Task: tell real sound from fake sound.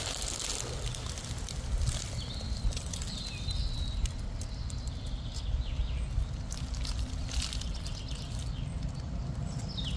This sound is real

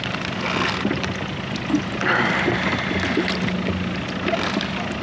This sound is real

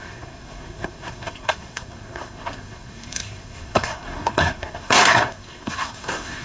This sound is fake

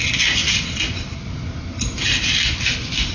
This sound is real